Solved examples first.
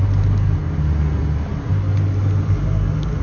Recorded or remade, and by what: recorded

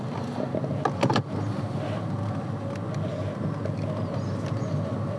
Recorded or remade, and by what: recorded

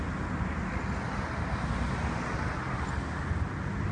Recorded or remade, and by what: recorded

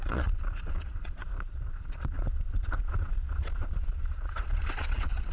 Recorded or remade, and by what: remade, vocoder, Vocos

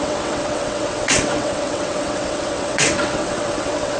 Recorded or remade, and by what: remade, vocoder, WaveNeXt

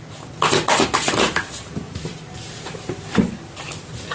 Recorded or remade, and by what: recorded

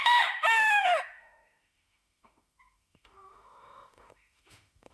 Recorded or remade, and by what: remade, autoencoder, DAC-VAE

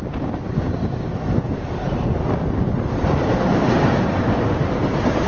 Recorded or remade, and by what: recorded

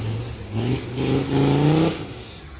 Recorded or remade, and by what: recorded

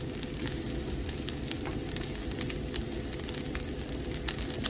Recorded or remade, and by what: recorded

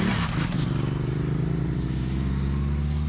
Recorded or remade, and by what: recorded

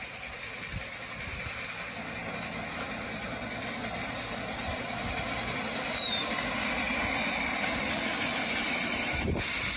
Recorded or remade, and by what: recorded